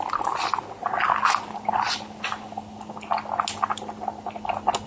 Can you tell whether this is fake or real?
real